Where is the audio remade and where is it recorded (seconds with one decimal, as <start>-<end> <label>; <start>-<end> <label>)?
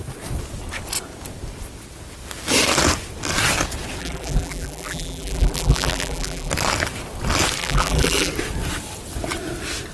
0.0-4.0 recorded; 4.0-6.5 remade; 6.5-7.6 recorded; 7.6-8.3 remade; 8.3-9.9 recorded